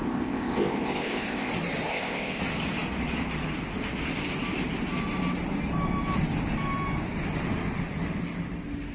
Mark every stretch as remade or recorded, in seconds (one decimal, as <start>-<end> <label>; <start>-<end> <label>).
0.0-1.5 remade; 1.5-1.9 recorded; 1.9-2.4 remade; 2.4-8.9 recorded